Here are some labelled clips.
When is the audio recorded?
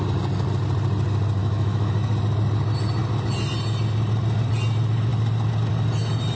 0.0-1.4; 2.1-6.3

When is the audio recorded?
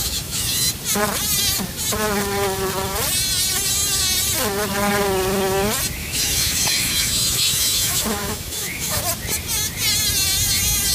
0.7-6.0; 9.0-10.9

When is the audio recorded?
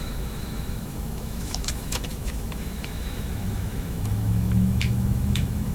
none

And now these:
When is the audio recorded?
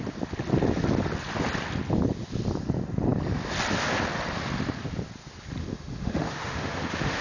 0.0-5.6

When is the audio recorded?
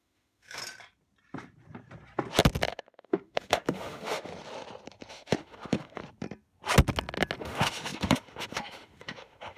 0.6-2.7; 4.3-5.1; 6.0-7.4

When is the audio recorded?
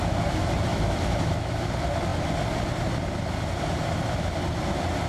0.0-0.7; 1.7-5.1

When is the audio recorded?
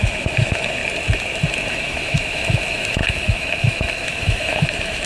0.8-1.7